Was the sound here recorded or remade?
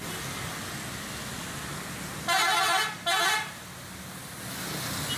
recorded